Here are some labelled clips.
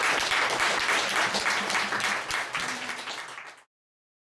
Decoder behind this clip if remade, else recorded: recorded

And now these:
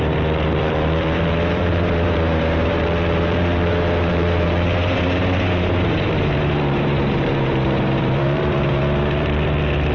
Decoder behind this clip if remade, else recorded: remade, vocoder, BigVGAN v2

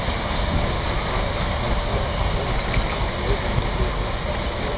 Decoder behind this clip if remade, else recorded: recorded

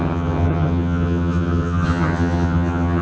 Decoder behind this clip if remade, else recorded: remade, vocoder, HiFi-GAN